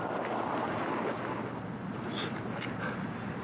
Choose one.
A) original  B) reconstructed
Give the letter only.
A